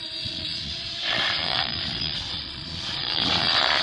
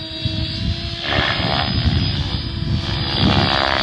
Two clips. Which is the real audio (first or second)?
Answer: second